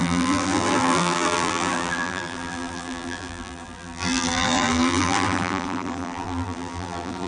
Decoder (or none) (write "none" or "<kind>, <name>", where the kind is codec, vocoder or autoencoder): vocoder, BigVGAN v2